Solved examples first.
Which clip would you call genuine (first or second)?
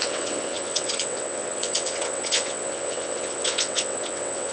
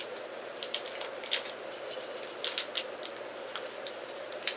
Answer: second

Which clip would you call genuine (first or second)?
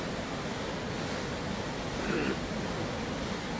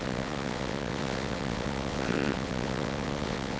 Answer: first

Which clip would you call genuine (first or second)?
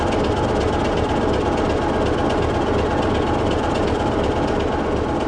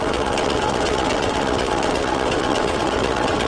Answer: first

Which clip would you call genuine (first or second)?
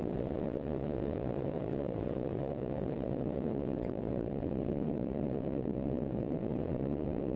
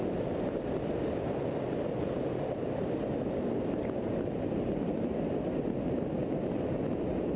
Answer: second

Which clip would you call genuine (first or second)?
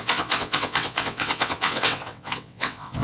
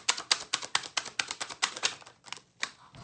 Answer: second